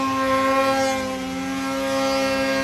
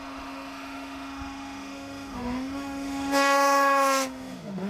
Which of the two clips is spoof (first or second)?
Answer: second